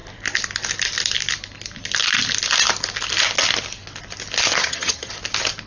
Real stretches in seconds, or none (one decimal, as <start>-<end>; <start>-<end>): 0.0-4.6; 5.1-5.7